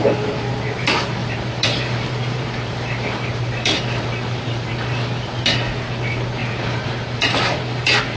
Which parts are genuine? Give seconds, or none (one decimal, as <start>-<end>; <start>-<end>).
0.0-1.2; 4.7-6.4